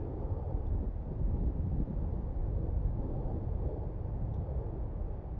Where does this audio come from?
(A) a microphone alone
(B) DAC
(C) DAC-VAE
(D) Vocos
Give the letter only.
A